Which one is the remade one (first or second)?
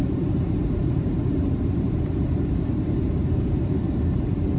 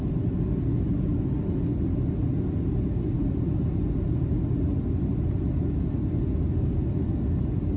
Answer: first